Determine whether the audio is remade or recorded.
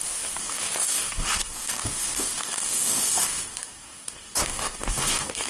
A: remade